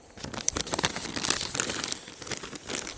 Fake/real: fake